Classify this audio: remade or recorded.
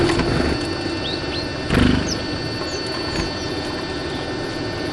recorded